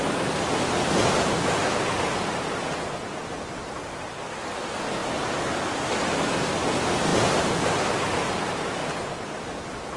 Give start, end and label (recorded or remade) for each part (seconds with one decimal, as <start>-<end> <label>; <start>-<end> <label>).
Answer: 0.0-10.0 recorded